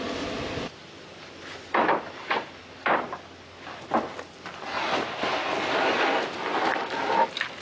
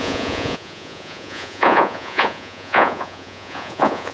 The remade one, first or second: second